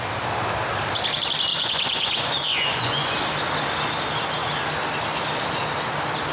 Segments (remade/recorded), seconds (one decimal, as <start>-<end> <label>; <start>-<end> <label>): 0.0-1.5 recorded; 1.5-3.2 remade; 3.2-6.3 recorded